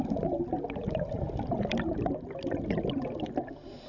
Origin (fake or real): real